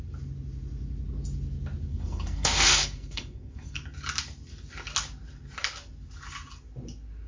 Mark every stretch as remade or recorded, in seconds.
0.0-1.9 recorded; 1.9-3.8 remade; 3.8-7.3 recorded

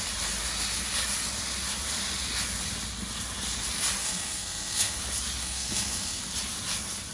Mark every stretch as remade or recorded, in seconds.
0.0-4.0 recorded; 4.0-5.0 remade; 5.0-5.4 recorded; 5.4-6.2 remade; 6.2-7.1 recorded

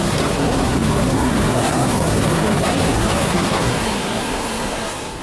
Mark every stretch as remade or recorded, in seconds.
0.0-5.2 remade

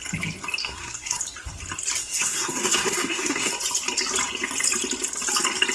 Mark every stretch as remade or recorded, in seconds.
0.0-0.6 recorded; 0.6-1.2 remade; 1.2-2.0 recorded; 2.0-3.5 remade; 3.5-5.7 recorded

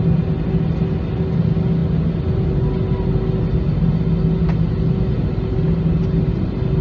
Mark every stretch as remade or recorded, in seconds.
0.0-6.8 recorded